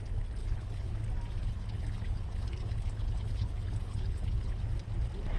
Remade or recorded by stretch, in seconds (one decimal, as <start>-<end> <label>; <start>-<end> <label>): 0.0-0.4 recorded; 0.4-0.9 remade; 0.9-1.4 recorded; 1.4-4.6 remade; 4.6-5.4 recorded